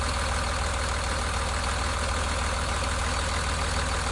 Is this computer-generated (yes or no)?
no